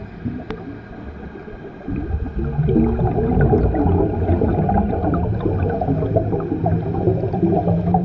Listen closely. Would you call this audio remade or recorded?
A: recorded